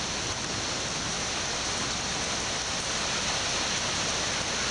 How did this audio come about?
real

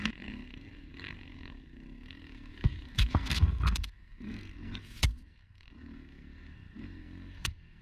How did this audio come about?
fake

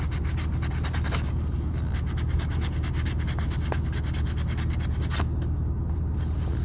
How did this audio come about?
real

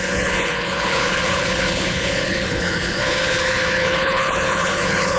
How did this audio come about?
fake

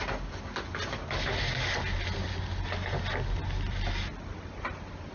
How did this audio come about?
real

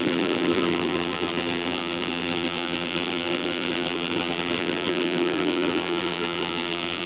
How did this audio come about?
fake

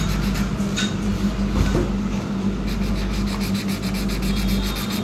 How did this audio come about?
real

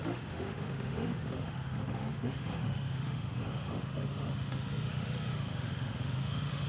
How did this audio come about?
fake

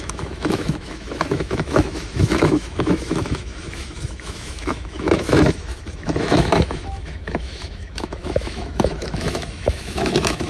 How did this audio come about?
fake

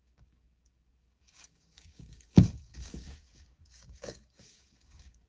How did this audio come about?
fake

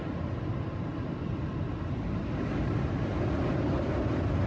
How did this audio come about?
real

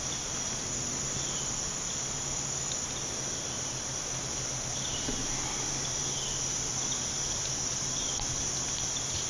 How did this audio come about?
real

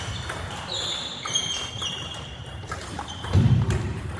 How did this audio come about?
fake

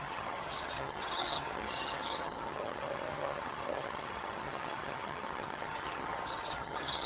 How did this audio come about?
fake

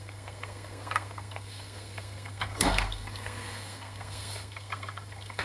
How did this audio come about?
fake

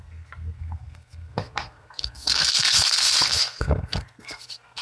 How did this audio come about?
fake